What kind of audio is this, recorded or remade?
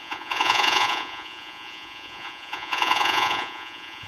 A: remade